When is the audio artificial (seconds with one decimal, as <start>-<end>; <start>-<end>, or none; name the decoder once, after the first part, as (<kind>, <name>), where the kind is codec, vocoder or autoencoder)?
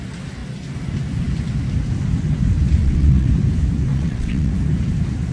2.8-3.3 (vocoder, WaveNeXt); 3.9-4.5